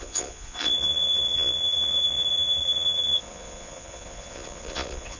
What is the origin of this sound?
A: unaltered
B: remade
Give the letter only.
B